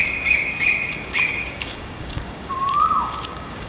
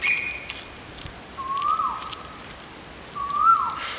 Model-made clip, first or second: first